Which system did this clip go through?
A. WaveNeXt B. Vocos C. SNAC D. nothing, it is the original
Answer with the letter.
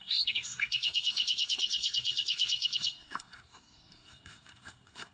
C